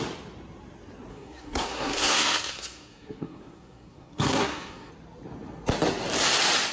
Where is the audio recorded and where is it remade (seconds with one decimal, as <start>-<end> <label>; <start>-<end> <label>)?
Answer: 0.0-1.1 recorded; 1.1-4.9 remade; 4.9-6.7 recorded